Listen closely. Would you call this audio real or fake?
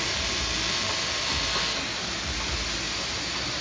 real